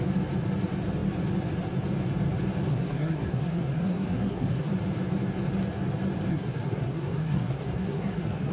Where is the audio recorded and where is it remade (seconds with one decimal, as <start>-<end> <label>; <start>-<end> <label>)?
0.0-2.7 recorded; 2.7-4.7 remade; 4.7-6.3 recorded; 6.3-8.5 remade